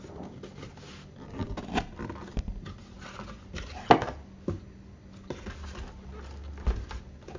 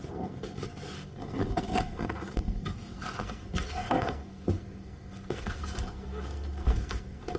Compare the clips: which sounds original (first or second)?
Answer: first